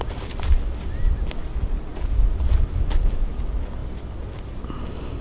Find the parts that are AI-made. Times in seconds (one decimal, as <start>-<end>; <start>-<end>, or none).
none